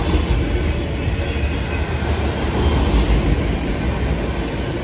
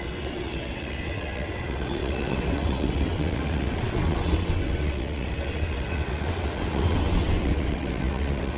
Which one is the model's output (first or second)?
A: second